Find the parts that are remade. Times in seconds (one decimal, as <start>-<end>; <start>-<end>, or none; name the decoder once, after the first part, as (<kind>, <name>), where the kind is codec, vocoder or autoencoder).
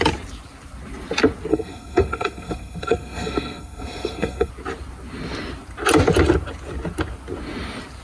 1.5-4.5 (codec, SNAC)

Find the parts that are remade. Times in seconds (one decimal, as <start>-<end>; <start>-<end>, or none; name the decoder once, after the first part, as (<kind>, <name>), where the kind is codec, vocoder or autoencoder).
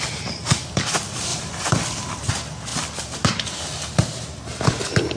1.3-2.3 (vocoder, BigVGAN v2)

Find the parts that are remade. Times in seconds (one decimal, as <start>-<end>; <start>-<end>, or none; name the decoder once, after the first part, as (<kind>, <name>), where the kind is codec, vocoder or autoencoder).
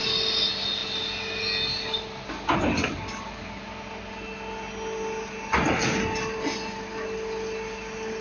none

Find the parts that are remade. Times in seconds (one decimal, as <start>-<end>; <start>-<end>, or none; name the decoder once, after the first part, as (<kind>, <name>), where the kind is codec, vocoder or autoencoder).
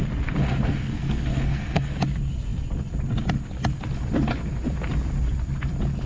0.4-1.9 (codec, SNAC)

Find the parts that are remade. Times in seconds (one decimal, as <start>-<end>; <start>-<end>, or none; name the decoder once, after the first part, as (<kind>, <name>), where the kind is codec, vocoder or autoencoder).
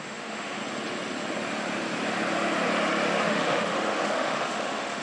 0.0-0.6 (autoencoder, DAC-VAE); 3.2-5.0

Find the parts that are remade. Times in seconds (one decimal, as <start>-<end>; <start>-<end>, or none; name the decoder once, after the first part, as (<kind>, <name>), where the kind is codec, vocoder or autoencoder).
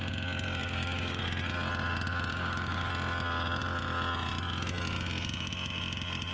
0.6-1.2 (codec, DAC); 2.3-2.9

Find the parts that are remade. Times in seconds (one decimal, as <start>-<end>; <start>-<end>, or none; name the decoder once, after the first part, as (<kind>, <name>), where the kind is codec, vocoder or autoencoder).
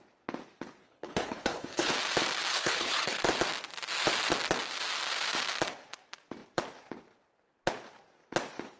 0.8-1.9 (codec, HILCodec); 2.5-3.2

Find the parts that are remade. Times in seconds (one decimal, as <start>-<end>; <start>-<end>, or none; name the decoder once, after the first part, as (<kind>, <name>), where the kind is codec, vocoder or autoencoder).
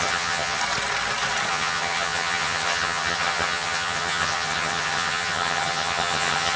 0.0-0.6 (vocoder, HiFi-GAN); 1.5-6.6